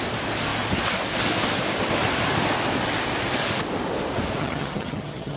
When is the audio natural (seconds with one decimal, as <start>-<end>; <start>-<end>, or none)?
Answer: 0.0-4.4